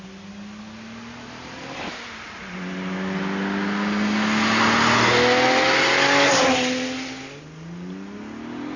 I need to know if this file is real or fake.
real